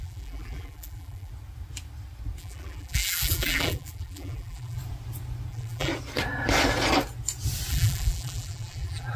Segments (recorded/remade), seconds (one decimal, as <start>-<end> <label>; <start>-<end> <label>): 0.0-1.3 remade; 1.3-2.4 recorded; 2.4-4.8 remade; 4.8-5.5 recorded; 5.5-5.9 remade; 5.9-7.7 recorded; 7.7-9.2 remade